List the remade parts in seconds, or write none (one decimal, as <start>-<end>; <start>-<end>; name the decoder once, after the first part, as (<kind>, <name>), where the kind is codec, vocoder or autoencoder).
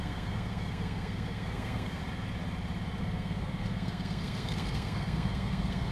0.0-2.0 (codec, SNAC); 3.0-5.9